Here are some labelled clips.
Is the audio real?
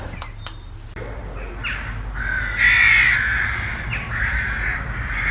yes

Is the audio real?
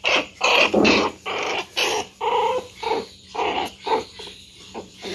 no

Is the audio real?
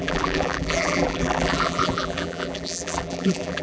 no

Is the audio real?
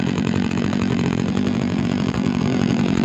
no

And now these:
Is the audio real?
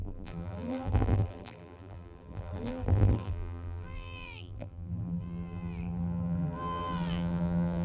no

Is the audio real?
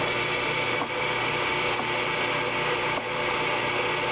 yes